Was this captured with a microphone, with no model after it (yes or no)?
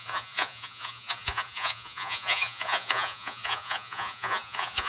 no